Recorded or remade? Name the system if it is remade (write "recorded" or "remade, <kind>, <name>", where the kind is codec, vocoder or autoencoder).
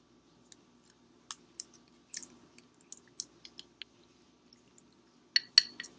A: recorded